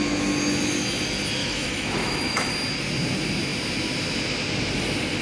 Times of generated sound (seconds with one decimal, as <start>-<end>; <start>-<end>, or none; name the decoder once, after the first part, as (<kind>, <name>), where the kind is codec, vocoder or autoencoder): 1.4-2.5 (autoencoder, DAC-VAE)